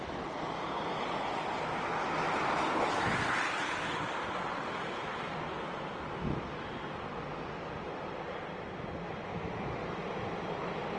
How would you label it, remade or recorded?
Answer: recorded